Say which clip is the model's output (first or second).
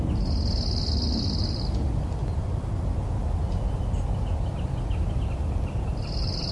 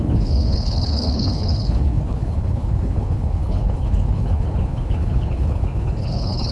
second